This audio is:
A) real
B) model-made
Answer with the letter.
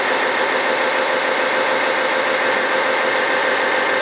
A